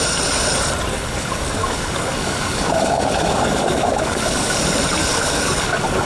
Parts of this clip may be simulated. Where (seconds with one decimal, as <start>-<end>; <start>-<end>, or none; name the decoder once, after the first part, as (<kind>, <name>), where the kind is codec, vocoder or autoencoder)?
0.9-4.6 (codec, DAC); 5.0-6.1